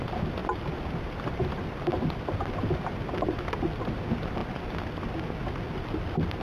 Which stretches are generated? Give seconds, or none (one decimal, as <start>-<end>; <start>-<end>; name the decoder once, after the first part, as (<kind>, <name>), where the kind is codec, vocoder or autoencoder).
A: none